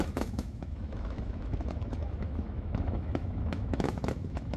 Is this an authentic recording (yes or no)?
no